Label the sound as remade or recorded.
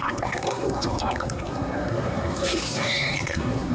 remade